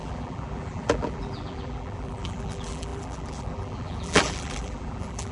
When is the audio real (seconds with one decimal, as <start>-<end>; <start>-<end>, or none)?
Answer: none